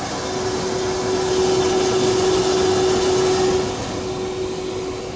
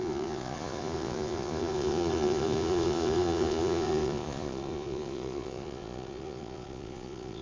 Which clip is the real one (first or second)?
first